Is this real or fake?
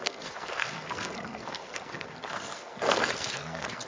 fake